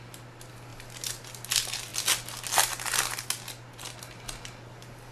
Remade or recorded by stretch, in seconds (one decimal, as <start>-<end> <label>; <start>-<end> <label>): 0.0-5.1 recorded